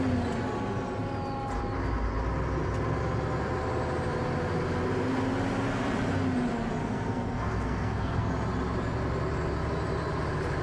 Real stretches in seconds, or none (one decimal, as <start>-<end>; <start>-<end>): 0.0-6.8; 8.3-10.6